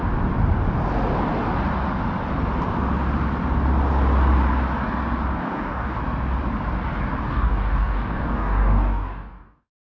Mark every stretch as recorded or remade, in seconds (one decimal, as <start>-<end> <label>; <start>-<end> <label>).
0.0-5.4 recorded; 5.4-6.0 remade; 6.0-7.3 recorded; 7.3-9.9 remade